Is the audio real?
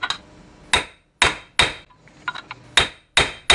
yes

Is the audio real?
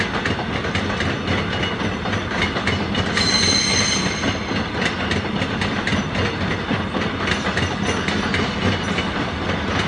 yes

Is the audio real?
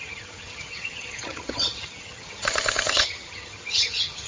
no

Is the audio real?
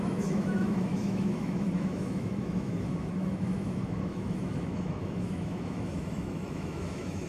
no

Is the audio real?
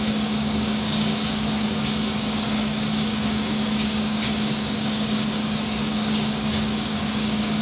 no